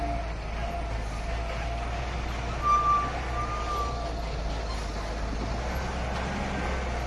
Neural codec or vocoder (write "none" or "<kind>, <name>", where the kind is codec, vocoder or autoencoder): none